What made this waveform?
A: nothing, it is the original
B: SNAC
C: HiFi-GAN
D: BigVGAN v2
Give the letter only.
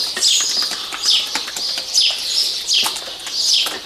A